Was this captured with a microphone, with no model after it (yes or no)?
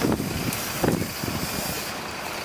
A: yes